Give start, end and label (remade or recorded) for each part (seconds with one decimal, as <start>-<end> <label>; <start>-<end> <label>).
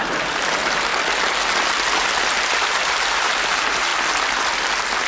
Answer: 0.0-0.9 remade; 0.9-2.2 recorded; 2.2-3.9 remade; 3.9-5.1 recorded